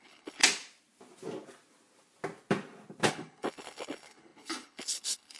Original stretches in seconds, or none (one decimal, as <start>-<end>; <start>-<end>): 0.4-3.1